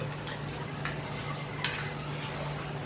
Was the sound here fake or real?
real